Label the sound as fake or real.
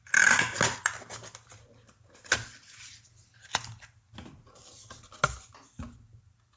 real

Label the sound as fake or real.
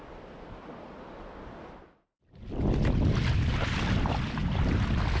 real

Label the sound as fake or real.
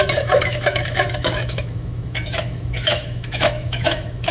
fake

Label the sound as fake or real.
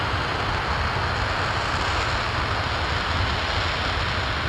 real